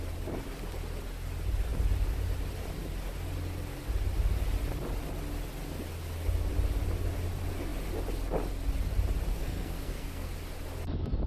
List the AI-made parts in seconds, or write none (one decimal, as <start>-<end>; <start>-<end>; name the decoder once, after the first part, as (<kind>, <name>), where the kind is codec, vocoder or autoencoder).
9.3-10.3 (codec, SNAC)